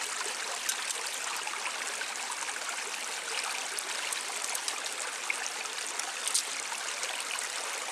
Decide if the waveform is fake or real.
real